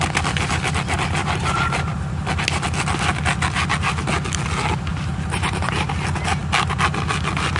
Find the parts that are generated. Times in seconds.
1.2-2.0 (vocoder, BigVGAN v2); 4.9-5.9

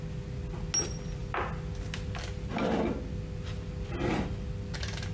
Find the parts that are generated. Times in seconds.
none

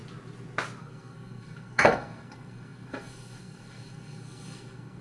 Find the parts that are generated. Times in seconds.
0.8-5.0 (codec, SNAC)

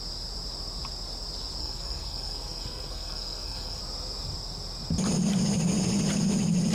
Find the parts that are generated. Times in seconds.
1.6-3.8 (codec, SNAC)

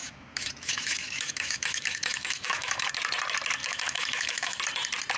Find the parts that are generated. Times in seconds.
0.0-2.9 (autoencoder, DAC-VAE); 3.6-4.6

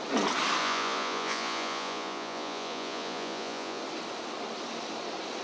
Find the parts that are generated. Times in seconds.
0.6-3.8 (vocoder, Vocos)